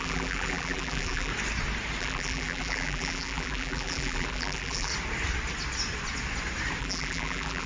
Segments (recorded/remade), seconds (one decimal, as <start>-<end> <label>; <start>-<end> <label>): 0.0-1.3 remade; 1.3-2.0 recorded; 2.0-4.9 remade; 4.9-6.8 recorded; 6.8-7.7 remade